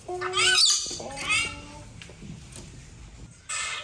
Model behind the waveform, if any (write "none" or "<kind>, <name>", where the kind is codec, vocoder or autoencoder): none